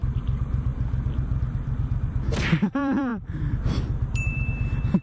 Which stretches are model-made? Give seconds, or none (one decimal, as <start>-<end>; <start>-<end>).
0.0-5.0